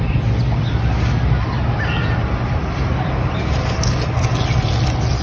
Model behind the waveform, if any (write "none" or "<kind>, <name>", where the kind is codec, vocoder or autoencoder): none